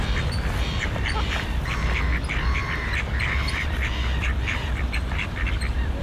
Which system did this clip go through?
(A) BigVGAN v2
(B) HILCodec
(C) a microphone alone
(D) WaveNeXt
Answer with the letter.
A